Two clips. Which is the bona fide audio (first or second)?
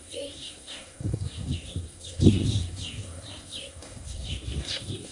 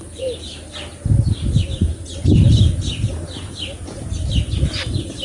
second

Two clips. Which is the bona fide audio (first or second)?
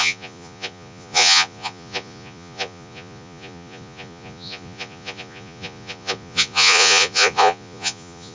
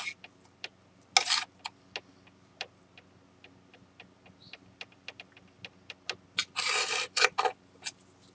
second